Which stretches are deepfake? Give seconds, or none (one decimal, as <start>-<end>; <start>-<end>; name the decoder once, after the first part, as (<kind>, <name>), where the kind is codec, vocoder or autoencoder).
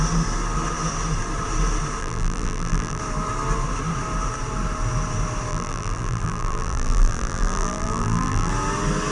2.0-3.0 (vocoder, BigVGAN v2); 5.5-8.5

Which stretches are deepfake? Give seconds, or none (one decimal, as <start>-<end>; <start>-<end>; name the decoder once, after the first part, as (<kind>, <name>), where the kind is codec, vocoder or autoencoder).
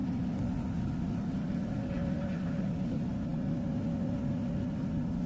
0.0-0.6 (vocoder, BigVGAN v2)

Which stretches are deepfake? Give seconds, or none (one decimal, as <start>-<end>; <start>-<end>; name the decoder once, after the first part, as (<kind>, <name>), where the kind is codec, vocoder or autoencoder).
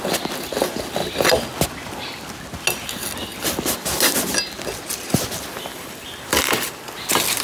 5.7-6.8 (vocoder, BigVGAN v2)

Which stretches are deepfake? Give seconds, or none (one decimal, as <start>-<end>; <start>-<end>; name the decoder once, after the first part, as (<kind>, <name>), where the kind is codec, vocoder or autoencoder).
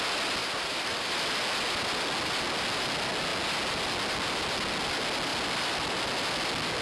0.4-1.1 (vocoder, BigVGAN v2)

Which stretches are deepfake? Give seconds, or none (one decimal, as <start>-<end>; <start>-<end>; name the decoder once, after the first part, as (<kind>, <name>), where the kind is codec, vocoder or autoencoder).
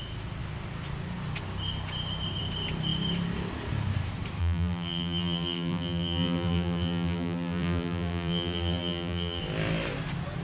4.4-9.4 (vocoder, BigVGAN v2)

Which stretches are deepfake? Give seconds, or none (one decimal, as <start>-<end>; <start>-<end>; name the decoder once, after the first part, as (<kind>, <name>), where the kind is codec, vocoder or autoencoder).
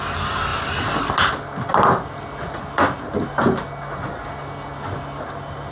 none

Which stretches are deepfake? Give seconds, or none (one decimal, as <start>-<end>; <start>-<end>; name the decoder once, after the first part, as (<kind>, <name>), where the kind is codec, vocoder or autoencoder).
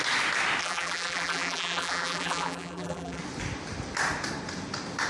0.6-3.2 (vocoder, BigVGAN v2)